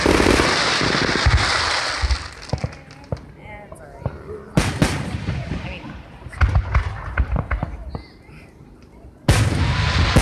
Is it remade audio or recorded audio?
recorded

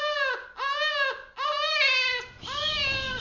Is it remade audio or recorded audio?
recorded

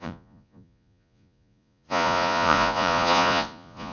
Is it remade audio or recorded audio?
remade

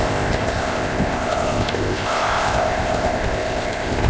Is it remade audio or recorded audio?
remade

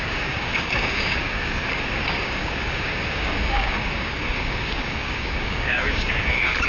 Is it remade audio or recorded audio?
remade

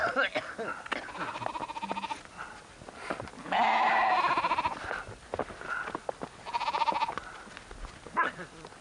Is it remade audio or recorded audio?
recorded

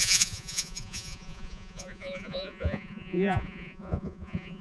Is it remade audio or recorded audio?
remade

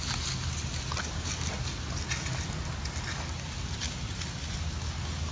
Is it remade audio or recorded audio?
recorded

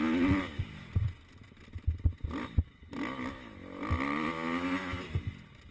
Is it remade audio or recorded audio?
recorded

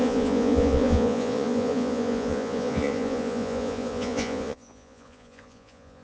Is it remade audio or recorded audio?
remade